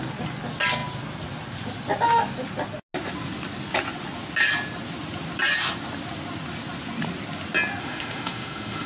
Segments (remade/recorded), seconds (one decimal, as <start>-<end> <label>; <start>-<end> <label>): 0.0-7.8 recorded; 7.8-8.9 remade